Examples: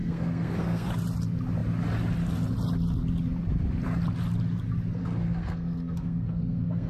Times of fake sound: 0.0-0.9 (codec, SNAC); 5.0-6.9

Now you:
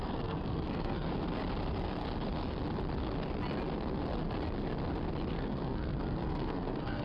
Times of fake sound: 0.0-1.1 (codec, SNAC); 5.3-7.0

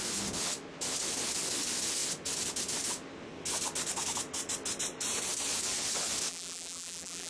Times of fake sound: 6.3-7.3 (vocoder, BigVGAN v2)

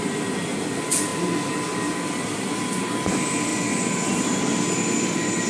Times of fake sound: none

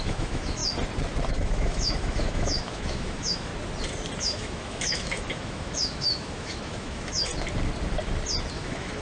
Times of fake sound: 0.0-0.6 (autoencoder, DAC-VAE); 1.3-3.5; 4.2-7.3; 8.5-9.0

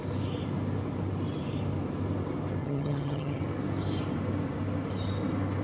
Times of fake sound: 2.6-3.4 (vocoder, HiFi-GAN)